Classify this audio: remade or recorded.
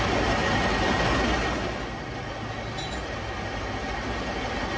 recorded